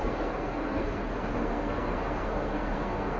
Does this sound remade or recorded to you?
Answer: remade